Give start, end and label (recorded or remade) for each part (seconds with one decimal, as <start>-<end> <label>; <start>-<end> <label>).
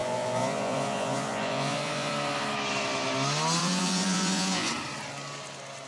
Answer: 0.0-2.1 remade; 2.1-3.6 recorded; 3.6-4.7 remade; 4.7-5.9 recorded